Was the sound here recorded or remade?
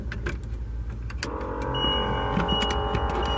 recorded